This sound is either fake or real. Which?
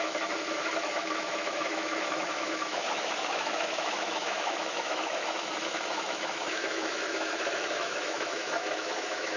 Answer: fake